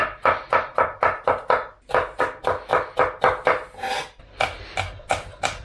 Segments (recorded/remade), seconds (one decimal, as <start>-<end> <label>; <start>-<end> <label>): 0.0-5.6 recorded